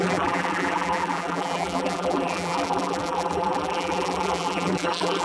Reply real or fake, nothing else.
fake